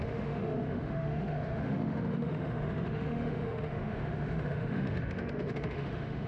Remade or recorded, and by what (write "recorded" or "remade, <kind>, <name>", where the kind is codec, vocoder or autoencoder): remade, autoencoder, DAC-VAE